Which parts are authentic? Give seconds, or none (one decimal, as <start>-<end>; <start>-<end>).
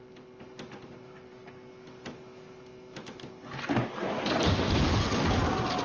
0.0-5.8